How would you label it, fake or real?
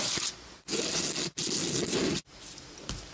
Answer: real